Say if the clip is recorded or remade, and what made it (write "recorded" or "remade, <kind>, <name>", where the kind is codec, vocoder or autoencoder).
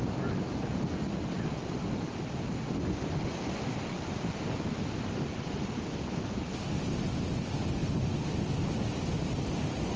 recorded